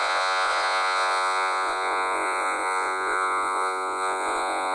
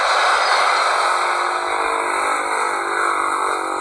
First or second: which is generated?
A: first